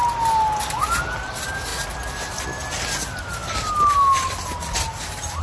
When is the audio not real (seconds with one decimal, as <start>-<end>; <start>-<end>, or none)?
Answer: none